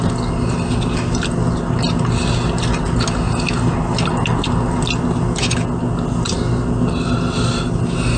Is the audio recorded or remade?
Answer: recorded